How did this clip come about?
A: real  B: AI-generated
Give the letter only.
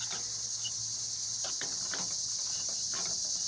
A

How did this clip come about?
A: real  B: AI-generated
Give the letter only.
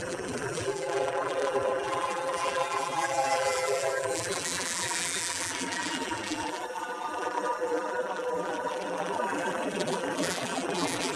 B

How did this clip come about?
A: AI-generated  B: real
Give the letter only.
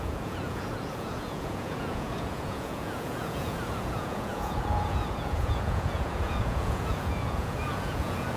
A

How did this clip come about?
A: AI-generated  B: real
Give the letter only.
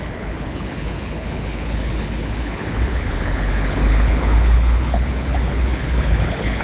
A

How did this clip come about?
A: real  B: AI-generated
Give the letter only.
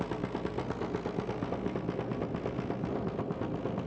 A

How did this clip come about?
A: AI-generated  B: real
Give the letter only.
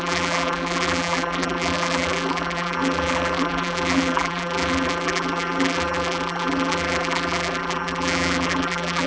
A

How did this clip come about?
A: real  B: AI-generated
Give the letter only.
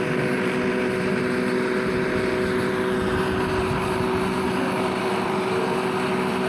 A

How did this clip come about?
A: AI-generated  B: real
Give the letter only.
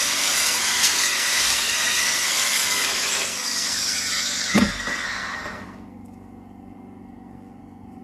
A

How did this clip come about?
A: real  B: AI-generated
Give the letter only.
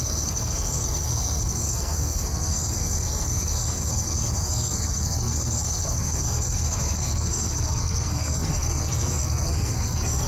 B